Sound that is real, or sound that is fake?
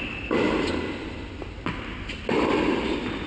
real